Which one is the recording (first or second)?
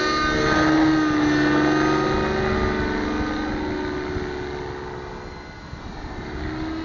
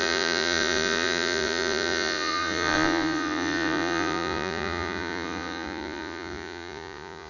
first